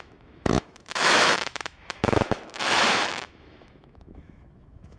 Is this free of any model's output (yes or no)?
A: no